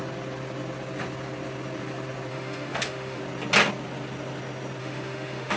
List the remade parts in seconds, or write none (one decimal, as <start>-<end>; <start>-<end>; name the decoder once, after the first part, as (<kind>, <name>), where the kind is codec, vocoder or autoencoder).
2.3-3.2 (autoencoder, DAC-VAE); 4.8-5.6